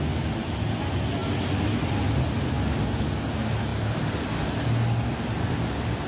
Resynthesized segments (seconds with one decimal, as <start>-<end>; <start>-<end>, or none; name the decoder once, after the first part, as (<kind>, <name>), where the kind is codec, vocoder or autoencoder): none